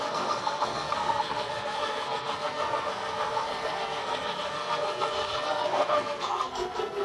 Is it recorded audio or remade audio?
remade